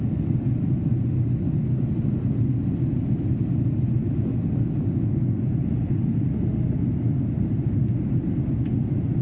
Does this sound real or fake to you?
real